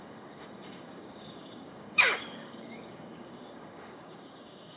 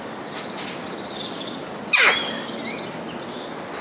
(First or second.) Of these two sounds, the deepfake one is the first